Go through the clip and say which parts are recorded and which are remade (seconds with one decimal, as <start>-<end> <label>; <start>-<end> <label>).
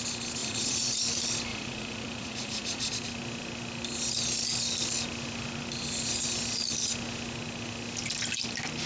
0.0-0.4 recorded; 0.4-1.0 remade; 1.0-1.5 recorded; 1.5-2.9 remade; 2.9-8.9 recorded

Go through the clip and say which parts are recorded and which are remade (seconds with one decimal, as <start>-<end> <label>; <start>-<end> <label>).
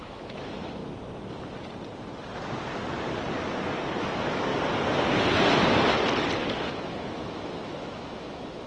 0.0-0.8 remade; 0.8-4.0 recorded; 4.0-4.5 remade; 4.5-6.7 recorded; 6.7-8.7 remade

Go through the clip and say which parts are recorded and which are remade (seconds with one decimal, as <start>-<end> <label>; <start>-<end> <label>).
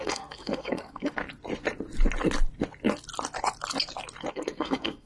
0.0-1.2 remade; 1.2-4.3 recorded; 4.3-5.1 remade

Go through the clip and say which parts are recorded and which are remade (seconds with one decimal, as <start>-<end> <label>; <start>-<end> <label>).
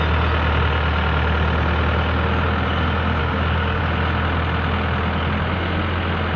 0.0-3.2 recorded; 3.2-3.8 remade; 3.8-6.4 recorded